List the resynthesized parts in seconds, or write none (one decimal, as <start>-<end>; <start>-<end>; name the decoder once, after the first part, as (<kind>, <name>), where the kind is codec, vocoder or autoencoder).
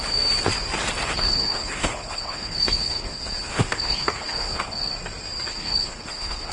1.0-4.9 (codec, HILCodec); 5.5-6.5